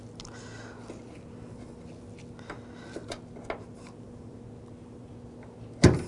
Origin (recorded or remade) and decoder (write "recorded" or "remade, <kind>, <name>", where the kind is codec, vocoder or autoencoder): recorded